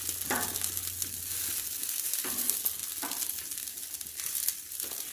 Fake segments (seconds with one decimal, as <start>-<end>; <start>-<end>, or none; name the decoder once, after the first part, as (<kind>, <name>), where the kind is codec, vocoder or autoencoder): none

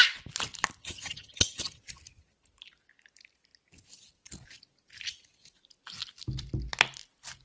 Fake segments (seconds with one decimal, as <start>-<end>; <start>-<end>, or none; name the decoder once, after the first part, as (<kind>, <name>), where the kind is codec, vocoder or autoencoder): 0.8-1.8 (vocoder, HiFi-GAN)